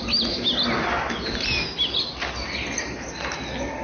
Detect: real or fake real